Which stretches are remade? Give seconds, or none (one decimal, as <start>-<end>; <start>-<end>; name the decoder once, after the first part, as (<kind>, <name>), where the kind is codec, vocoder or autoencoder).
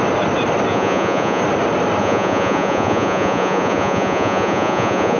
0.7-1.4 (vocoder, Vocos); 2.0-5.2